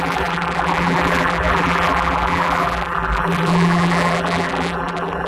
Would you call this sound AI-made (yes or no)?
yes